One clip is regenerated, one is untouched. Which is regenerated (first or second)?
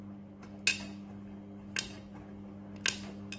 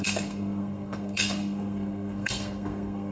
second